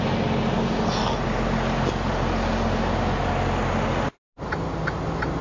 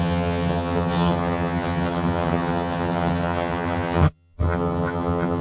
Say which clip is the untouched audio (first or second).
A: first